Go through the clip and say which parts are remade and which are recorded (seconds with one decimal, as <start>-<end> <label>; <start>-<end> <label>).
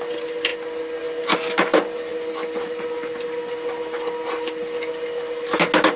0.0-6.0 recorded